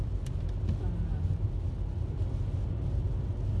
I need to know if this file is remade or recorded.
recorded